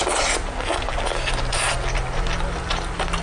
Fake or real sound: real